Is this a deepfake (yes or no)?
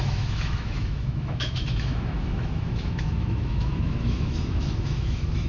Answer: yes